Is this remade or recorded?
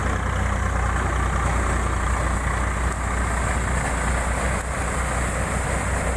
recorded